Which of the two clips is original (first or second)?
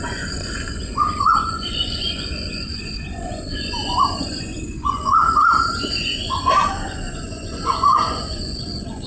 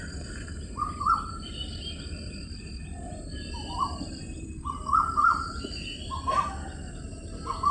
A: second